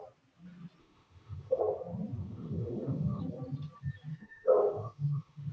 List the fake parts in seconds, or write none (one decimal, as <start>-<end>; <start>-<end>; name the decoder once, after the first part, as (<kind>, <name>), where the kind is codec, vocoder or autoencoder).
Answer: 0.8-1.6 (autoencoder, DAC-VAE); 2.2-3.2; 4.1-5.5